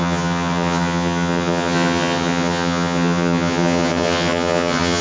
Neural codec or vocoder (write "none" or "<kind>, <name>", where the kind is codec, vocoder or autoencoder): vocoder, HiFi-GAN